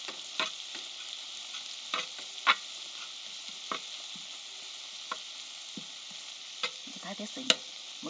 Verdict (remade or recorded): recorded